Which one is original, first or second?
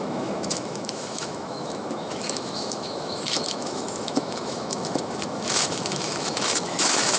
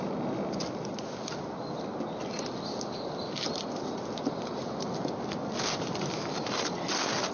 second